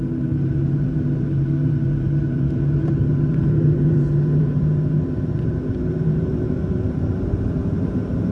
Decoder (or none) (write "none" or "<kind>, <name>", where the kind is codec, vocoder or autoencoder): vocoder, BigVGAN v2